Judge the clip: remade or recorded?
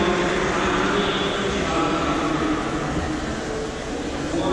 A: recorded